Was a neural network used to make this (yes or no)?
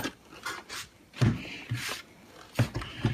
yes